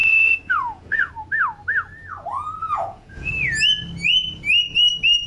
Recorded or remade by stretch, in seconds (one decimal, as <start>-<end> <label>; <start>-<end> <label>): 0.0-1.1 remade; 1.1-2.6 recorded; 2.6-3.3 remade; 3.3-5.3 recorded

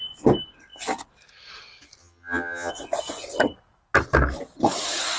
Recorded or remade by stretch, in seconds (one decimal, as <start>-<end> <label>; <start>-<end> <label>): 0.0-2.0 recorded; 2.0-2.7 remade; 2.7-5.2 recorded